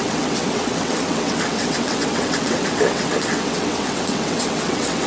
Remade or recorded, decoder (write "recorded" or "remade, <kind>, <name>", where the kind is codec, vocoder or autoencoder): remade, vocoder, WaveNeXt